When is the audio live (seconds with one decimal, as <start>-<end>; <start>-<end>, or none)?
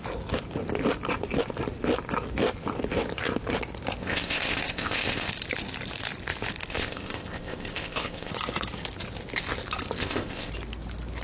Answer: 0.0-4.0; 5.3-6.7; 8.3-10.0; 10.5-11.2